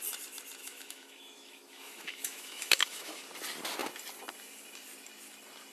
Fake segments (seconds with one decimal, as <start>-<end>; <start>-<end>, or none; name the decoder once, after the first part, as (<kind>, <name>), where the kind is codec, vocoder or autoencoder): 0.6-3.2 (autoencoder, DAC-VAE)